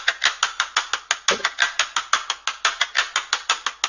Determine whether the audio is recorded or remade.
recorded